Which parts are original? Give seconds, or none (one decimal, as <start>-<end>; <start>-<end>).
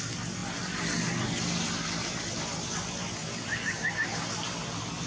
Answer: 0.0-5.1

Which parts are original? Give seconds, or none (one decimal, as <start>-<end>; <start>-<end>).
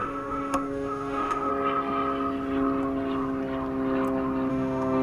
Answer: 1.5-4.5